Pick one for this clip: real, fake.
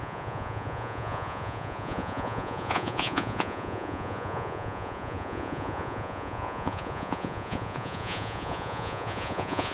fake